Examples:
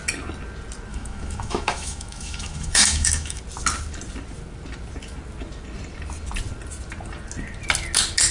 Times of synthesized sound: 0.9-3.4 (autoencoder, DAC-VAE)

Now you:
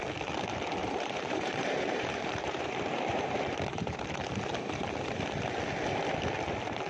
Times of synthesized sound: 0.8-4.2 (vocoder, BigVGAN v2)

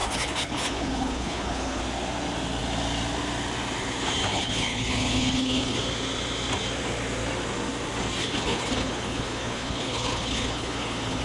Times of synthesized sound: 0.0-1.8 (codec, HILCodec); 4.3-5.8; 8.2-11.2

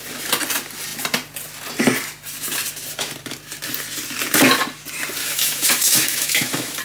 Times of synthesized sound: 5.2-6.8 (autoencoder, DAC-VAE)

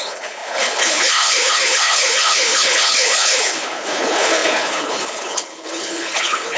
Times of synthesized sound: 0.0-6.6 (codec, HILCodec)

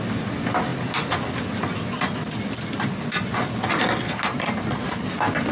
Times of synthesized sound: none

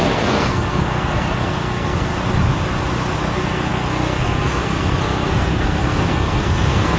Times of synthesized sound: 0.0-2.1 (codec, SNAC); 3.2-7.0

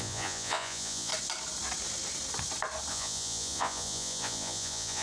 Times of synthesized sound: 0.0-1.1 (vocoder, Vocos); 2.9-5.0